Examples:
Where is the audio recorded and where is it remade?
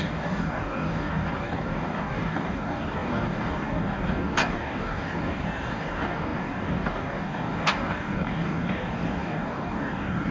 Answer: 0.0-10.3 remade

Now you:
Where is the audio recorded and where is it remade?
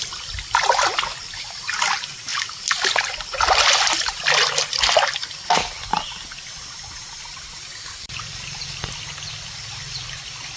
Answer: 0.0-10.6 recorded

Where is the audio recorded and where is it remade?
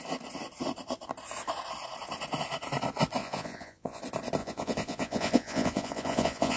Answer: 0.0-3.2 recorded; 3.2-4.0 remade; 4.0-4.4 recorded; 4.4-6.6 remade